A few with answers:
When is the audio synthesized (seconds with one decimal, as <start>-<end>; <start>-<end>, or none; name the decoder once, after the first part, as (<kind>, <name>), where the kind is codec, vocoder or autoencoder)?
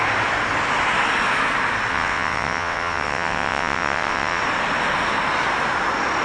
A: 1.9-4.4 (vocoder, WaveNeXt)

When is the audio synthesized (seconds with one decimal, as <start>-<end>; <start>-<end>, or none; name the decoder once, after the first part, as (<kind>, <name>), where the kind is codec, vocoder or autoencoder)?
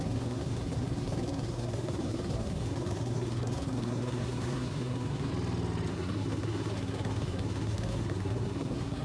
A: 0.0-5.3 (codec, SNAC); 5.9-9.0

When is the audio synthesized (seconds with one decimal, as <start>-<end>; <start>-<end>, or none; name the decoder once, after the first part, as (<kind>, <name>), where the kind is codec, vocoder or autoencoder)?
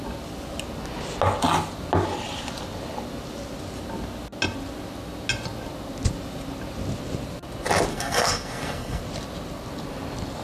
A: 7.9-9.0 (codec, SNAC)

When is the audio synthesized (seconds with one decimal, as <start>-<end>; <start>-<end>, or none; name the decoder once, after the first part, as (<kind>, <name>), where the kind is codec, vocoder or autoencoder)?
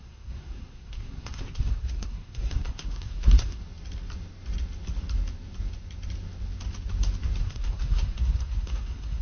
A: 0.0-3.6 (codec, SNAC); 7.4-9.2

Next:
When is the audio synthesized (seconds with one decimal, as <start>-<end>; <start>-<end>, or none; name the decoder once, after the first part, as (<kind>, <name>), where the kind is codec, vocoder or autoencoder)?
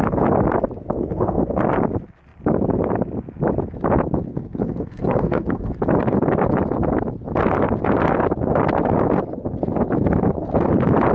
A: 0.9-1.6 (codec, SNAC); 4.3-5.7